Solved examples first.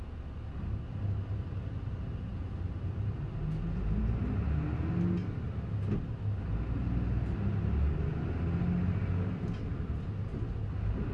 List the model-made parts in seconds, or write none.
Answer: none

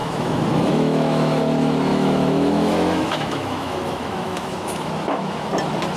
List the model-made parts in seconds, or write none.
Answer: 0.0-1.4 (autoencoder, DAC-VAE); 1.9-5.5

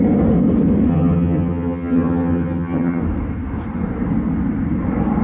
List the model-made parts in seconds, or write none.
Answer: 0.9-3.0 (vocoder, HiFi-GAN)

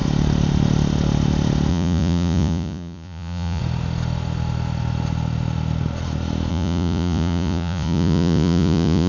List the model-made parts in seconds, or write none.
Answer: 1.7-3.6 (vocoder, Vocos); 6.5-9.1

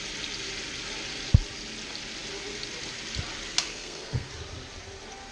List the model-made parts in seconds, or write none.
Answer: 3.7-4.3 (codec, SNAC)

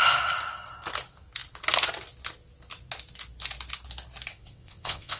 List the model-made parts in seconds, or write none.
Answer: 4.3-5.2 (vocoder, WaveNeXt)